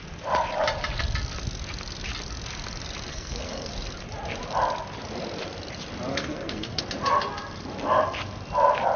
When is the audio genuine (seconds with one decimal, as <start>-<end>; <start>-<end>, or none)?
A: 0.0-3.1; 3.7-6.1; 6.8-9.0